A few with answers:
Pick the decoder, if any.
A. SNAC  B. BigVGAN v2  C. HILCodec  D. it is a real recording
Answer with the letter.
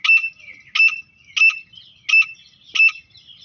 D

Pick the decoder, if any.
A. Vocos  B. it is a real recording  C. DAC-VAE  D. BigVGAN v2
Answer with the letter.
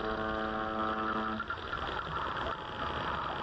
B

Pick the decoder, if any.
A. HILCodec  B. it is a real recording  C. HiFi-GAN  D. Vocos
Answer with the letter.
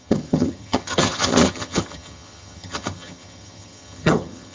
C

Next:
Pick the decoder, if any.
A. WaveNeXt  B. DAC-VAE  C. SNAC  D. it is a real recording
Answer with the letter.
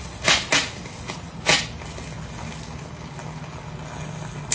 D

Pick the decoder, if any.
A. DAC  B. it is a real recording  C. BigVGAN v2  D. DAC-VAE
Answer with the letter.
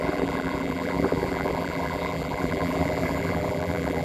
C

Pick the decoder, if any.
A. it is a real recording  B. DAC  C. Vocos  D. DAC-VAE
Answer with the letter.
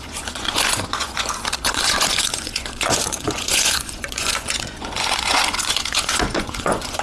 C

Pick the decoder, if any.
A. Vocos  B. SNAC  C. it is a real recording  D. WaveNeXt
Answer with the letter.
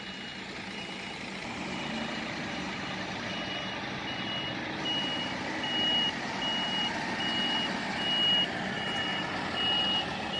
C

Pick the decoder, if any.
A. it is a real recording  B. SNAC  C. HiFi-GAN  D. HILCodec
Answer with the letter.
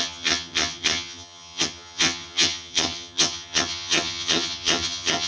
C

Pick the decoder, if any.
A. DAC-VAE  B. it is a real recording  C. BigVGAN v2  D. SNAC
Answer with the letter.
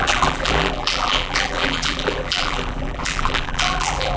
C